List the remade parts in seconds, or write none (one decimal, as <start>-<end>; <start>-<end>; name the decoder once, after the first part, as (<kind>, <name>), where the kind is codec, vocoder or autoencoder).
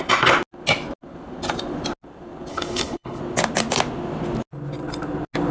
2.5-3.2 (codec, HILCodec)